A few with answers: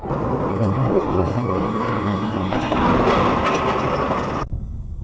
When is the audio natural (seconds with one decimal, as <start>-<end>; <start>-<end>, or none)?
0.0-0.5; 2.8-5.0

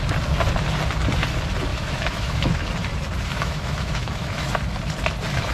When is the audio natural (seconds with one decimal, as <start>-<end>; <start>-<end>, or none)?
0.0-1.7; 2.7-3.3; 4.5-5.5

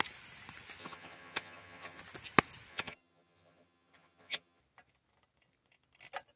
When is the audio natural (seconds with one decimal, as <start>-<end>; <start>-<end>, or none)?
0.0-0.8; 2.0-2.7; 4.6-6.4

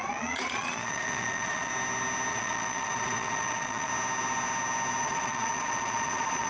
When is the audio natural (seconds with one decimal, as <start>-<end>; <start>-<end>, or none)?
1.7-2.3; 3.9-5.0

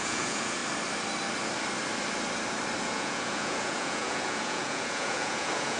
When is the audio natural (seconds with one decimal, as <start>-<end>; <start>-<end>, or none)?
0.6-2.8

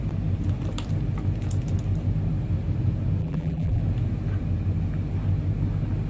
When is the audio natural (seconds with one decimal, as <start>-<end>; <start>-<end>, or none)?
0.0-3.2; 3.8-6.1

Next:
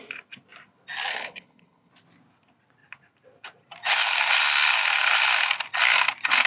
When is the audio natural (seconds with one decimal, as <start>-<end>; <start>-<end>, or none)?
0.0-1.1; 1.9-6.5